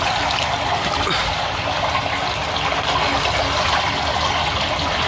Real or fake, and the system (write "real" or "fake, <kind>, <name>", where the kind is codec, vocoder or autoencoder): real